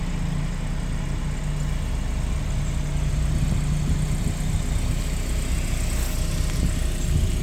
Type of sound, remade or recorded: recorded